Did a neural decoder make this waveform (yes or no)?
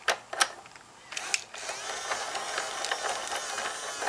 no